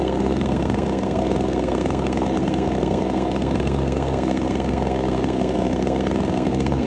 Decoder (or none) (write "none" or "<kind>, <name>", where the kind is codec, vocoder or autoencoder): codec, SNAC